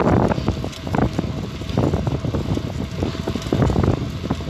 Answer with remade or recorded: recorded